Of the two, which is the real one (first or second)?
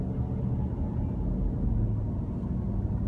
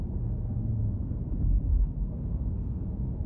first